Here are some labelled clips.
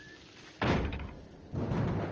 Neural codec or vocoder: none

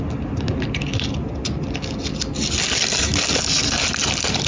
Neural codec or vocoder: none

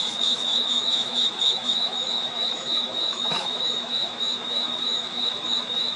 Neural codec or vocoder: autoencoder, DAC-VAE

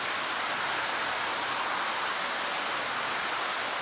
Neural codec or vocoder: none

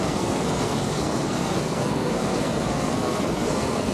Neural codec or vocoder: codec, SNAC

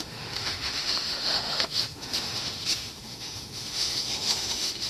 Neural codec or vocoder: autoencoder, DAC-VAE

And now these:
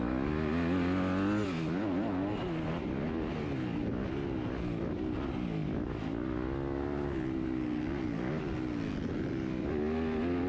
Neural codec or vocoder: none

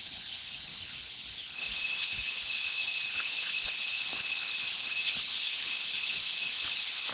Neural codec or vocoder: codec, HILCodec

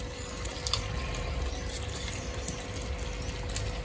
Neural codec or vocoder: none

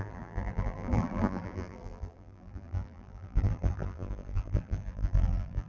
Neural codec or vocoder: vocoder, BigVGAN v2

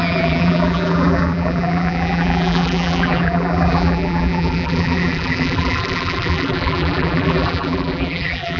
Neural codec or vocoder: vocoder, BigVGAN v2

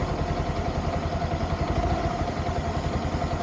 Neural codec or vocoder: none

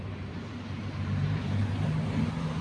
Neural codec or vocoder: vocoder, BigVGAN v2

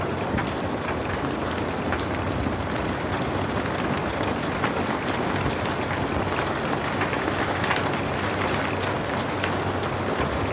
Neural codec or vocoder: none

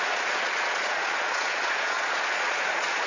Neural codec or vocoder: vocoder, Vocos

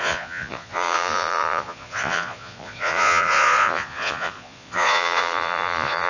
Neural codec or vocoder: vocoder, Vocos